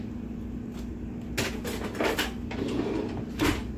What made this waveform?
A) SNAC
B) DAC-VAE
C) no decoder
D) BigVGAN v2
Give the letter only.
C